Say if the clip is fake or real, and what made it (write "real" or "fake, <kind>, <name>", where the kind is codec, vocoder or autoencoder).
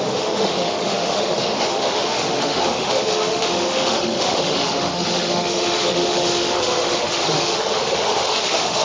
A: fake, autoencoder, DAC-VAE